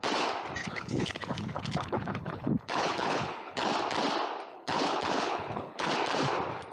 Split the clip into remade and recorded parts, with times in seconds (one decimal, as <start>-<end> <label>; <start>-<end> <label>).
0.0-0.6 recorded; 0.6-3.7 remade; 3.7-4.5 recorded; 4.5-5.9 remade; 5.9-6.7 recorded